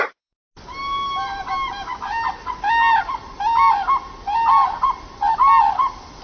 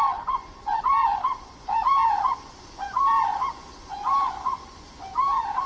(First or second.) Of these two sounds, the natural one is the first